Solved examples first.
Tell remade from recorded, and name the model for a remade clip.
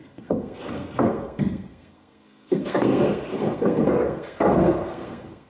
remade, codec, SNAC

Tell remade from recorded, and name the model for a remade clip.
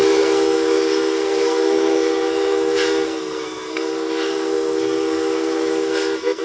remade, codec, SNAC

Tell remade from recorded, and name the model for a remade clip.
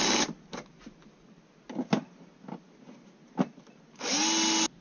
recorded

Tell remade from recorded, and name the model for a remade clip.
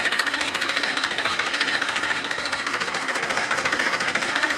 remade, codec, SNAC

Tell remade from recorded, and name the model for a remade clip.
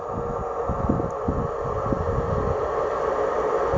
recorded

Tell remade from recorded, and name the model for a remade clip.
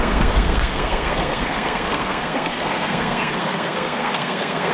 remade, codec, SNAC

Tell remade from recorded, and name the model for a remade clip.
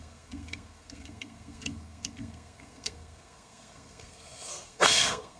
remade, codec, SNAC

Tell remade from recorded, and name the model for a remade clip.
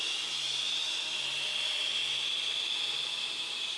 recorded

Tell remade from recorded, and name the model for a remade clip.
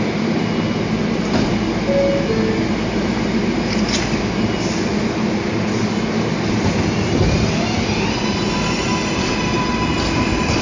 recorded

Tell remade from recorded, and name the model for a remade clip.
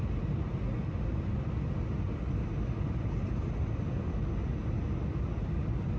recorded